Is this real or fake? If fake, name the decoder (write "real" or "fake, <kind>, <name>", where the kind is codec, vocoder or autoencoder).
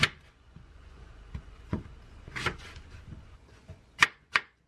fake, vocoder, Vocos